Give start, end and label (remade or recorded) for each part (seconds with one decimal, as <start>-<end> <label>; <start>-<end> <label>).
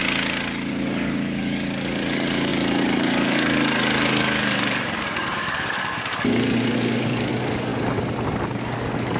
0.0-0.7 recorded; 0.7-7.7 remade; 7.7-8.6 recorded; 8.6-9.2 remade